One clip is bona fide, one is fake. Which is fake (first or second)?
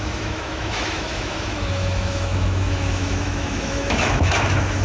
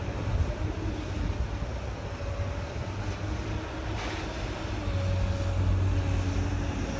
first